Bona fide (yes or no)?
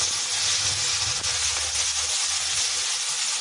yes